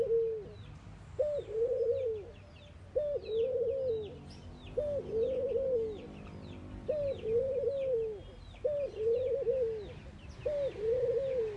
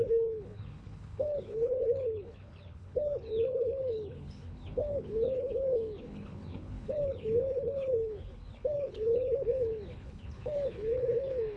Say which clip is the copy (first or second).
second